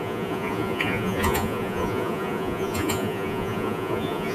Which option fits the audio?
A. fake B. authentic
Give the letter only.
A